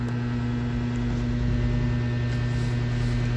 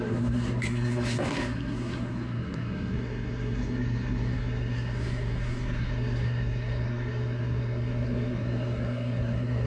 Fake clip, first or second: second